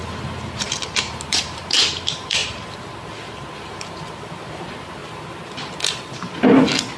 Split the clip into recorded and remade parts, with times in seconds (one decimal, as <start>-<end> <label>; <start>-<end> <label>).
0.0-5.0 remade; 5.0-7.0 recorded

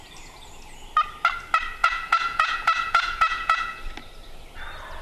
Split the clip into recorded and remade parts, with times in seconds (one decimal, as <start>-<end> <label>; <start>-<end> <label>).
0.0-1.8 recorded; 1.8-3.8 remade; 3.8-5.0 recorded